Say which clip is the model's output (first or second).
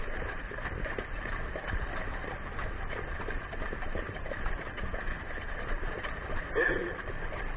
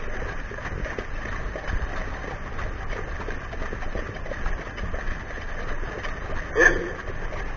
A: first